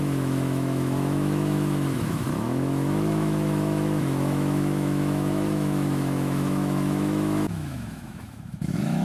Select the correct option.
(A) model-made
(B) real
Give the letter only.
A